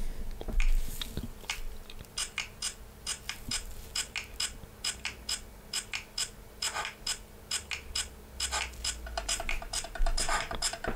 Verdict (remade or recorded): recorded